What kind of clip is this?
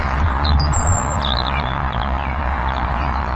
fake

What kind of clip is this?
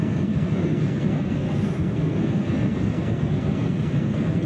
fake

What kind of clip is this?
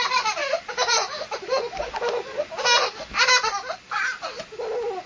real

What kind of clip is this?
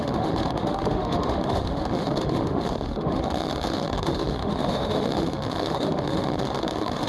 fake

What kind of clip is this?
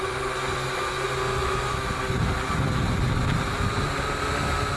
real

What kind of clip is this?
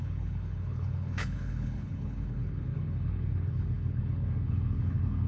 fake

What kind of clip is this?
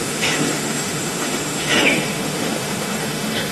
fake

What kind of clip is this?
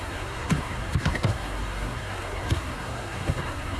fake